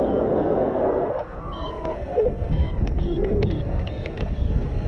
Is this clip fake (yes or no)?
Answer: yes